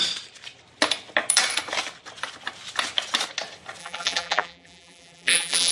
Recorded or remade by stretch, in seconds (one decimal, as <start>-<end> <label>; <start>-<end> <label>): 0.0-3.8 recorded; 3.8-5.7 remade